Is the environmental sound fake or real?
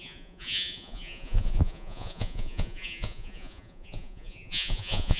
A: fake